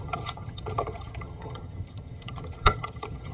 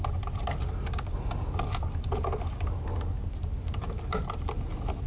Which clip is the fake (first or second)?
first